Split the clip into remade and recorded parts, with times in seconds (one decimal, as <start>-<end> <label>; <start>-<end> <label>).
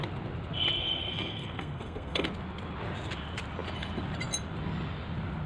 0.0-0.8 recorded; 0.8-2.3 remade; 2.3-5.5 recorded